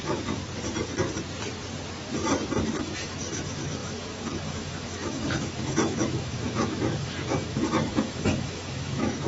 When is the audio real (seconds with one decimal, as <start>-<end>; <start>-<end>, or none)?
0.4-2.8